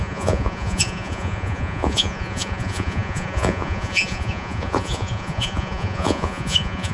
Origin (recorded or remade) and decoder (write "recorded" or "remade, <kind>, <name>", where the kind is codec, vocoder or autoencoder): remade, vocoder, Vocos